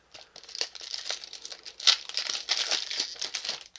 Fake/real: real